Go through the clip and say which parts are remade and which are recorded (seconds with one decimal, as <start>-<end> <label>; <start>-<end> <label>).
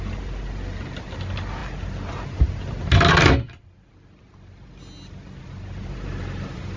0.0-6.8 recorded